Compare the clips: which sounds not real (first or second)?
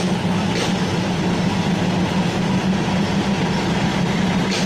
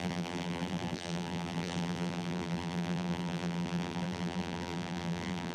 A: second